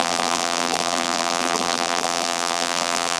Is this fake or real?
fake